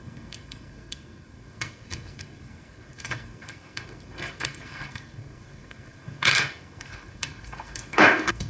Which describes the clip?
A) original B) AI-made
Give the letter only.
B